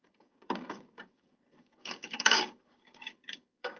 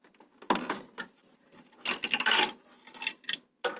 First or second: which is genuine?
second